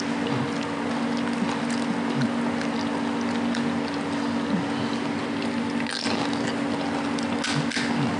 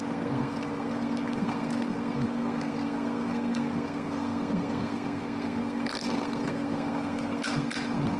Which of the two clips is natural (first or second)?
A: first